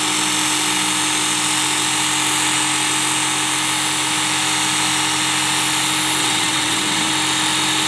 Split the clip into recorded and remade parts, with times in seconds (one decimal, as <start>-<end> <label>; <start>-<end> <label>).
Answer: 0.0-6.2 recorded; 6.2-7.1 remade; 7.1-7.9 recorded